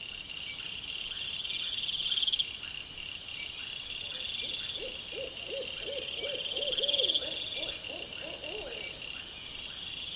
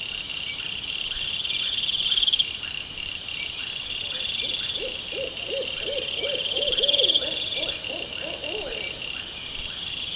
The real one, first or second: first